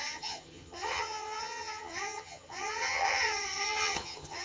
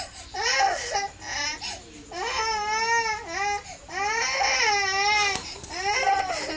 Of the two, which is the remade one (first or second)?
first